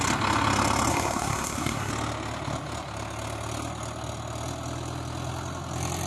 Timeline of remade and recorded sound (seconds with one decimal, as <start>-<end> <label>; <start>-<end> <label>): 0.0-0.9 recorded; 0.9-1.9 remade; 1.9-6.1 recorded